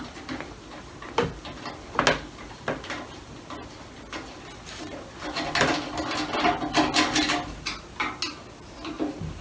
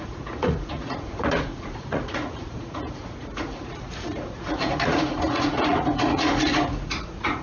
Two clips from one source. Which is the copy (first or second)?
second